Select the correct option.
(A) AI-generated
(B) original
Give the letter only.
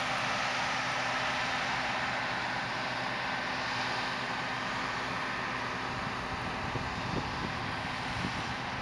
B